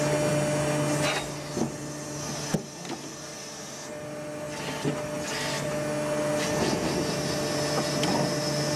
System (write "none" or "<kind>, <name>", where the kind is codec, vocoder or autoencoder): none